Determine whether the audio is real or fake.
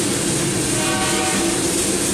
real